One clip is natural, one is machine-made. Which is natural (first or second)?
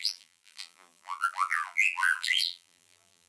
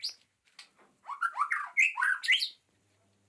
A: second